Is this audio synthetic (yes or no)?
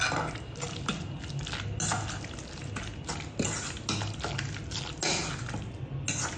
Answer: no